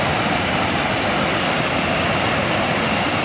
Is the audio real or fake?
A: real